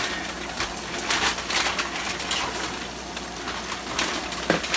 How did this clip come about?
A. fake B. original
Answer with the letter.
B